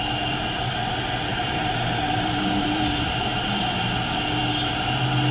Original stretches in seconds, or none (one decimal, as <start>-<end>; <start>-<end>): 0.0-1.3; 3.7-5.3